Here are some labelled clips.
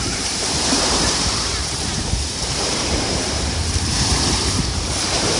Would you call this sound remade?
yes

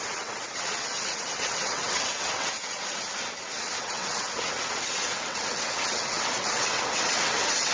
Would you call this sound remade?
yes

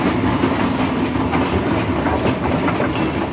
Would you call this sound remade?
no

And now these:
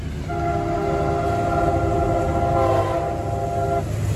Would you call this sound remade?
no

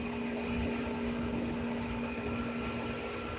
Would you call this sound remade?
no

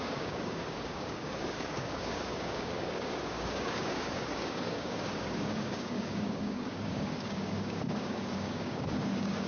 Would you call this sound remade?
yes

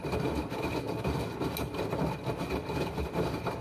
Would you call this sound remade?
no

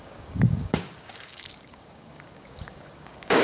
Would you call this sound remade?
yes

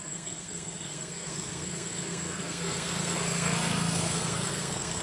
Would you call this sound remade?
yes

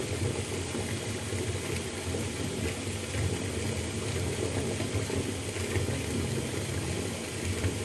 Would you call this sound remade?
no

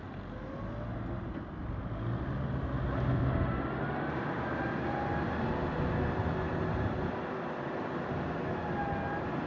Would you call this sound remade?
no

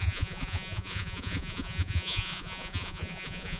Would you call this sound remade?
yes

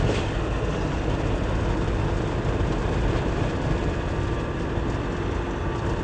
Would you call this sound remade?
no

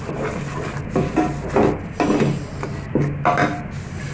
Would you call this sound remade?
no